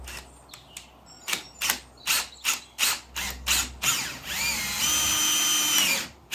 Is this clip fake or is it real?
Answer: real